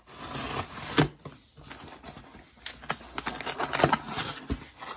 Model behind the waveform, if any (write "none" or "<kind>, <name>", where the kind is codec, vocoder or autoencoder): none